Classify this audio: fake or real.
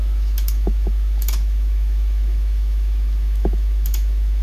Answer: fake